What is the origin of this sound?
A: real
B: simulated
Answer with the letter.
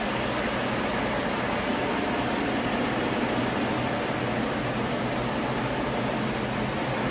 A